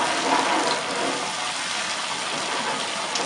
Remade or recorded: recorded